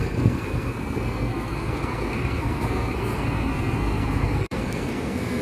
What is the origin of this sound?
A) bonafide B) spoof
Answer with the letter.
B